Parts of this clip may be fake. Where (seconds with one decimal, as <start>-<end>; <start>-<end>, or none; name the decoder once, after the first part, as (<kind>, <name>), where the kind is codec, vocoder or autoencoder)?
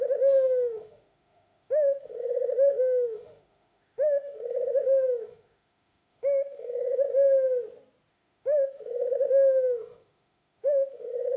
0.0-7.1 (autoencoder, DAC-VAE); 8.1-11.4